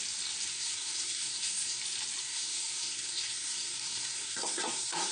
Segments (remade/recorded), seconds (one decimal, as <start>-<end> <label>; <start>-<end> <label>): 0.0-0.5 recorded; 0.5-1.8 remade; 1.8-2.2 recorded; 2.2-5.1 remade